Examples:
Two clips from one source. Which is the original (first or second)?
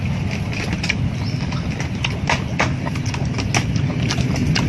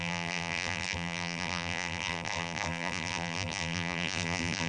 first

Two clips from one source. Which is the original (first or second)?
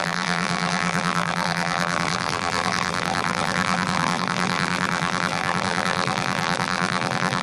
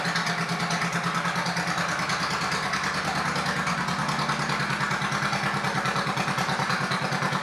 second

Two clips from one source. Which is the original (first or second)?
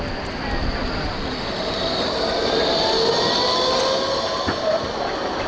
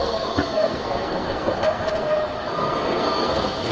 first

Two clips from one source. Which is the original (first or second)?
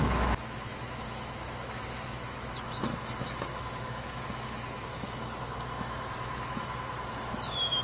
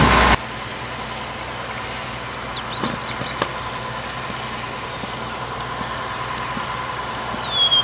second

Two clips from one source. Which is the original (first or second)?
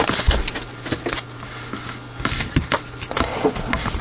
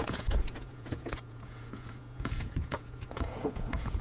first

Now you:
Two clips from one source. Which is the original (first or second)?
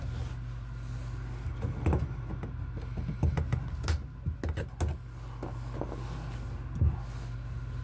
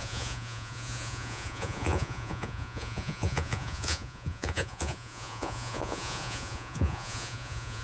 first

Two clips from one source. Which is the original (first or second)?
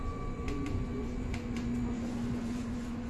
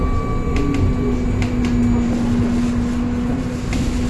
second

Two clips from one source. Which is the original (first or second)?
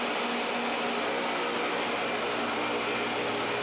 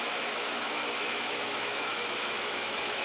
first